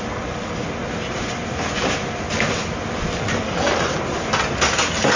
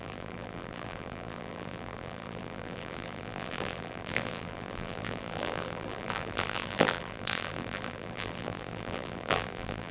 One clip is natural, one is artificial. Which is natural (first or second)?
first